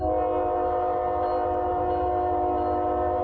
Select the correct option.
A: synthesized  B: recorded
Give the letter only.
B